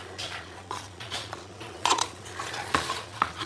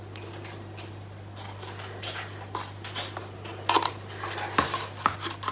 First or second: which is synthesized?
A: first